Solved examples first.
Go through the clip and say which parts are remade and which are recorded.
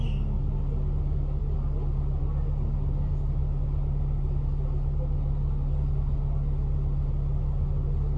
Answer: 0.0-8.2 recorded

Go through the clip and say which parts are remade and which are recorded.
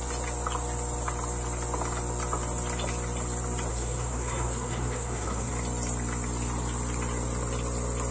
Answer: 0.0-3.7 recorded; 3.7-5.5 remade; 5.5-8.1 recorded